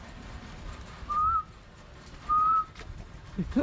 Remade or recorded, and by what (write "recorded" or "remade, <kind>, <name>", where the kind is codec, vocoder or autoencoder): recorded